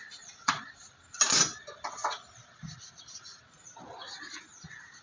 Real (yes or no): yes